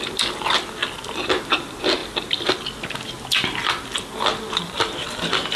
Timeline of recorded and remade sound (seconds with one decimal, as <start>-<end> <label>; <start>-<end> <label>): 0.0-5.6 recorded